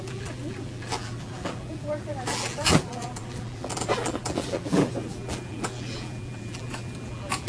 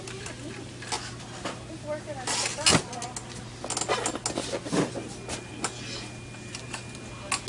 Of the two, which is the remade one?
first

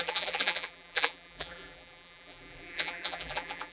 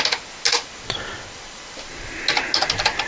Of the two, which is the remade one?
first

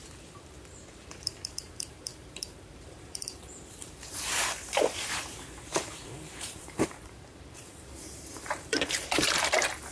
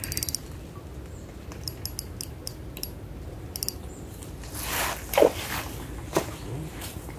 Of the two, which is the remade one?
first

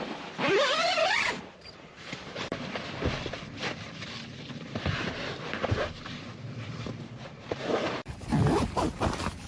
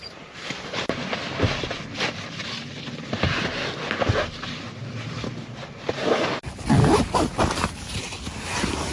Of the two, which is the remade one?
first